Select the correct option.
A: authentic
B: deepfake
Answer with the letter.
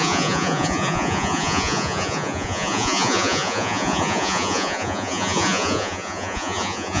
B